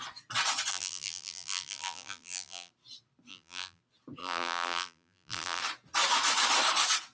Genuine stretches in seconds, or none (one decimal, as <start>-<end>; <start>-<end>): 0.0-0.7; 2.7-3.3; 3.8-4.2; 5.6-7.1